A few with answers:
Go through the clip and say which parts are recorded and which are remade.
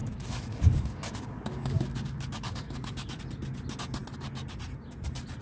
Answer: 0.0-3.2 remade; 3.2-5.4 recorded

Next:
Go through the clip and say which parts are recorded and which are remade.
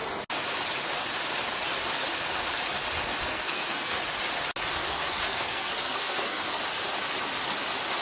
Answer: 0.0-3.3 recorded; 3.3-4.0 remade; 4.0-4.8 recorded; 4.8-6.6 remade; 6.6-8.0 recorded